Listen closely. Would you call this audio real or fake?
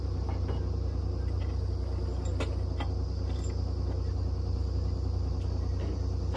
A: real